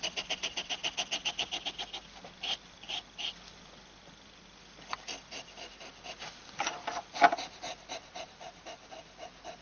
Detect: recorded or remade recorded